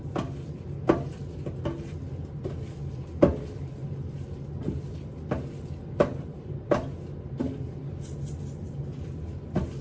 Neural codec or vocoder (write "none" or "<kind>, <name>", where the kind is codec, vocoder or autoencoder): none